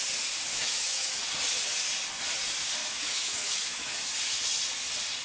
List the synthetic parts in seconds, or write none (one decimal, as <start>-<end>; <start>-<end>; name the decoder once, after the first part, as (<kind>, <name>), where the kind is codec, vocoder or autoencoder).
0.5-1.2 (autoencoder, DAC-VAE); 2.8-4.0